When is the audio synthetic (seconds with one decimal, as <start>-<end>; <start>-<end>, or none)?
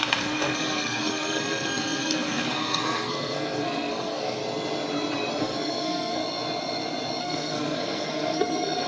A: 0.0-4.4; 5.4-6.2; 7.2-8.9